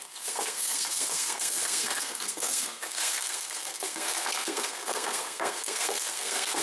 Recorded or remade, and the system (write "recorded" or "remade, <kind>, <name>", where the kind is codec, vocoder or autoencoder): remade, codec, SNAC